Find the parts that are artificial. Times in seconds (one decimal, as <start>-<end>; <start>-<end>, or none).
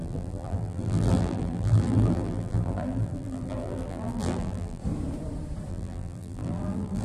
0.0-4.8; 5.7-7.0